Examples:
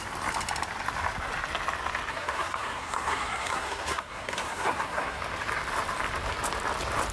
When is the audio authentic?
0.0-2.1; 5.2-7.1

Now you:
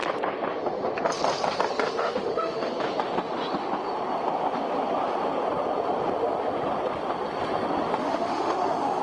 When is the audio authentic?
0.0-2.0; 2.7-8.0